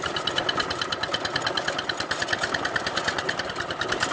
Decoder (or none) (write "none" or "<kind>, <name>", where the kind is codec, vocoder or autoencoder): vocoder, BigVGAN v2